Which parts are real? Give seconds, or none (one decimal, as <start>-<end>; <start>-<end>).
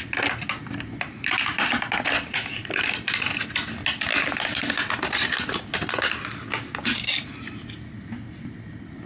0.0-9.1